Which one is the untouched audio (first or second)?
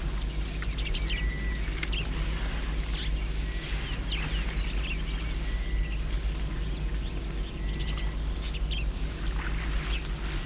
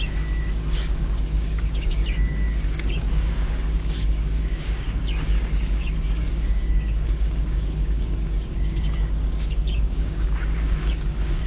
first